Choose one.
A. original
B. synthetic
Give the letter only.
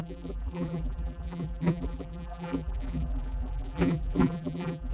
B